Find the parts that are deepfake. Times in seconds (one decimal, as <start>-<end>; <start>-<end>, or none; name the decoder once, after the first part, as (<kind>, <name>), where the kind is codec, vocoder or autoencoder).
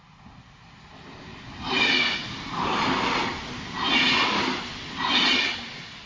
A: none